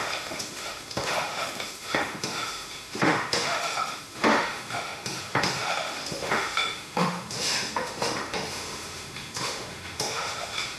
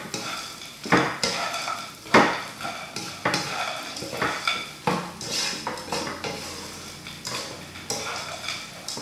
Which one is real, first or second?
second